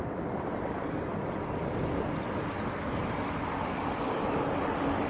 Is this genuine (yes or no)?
no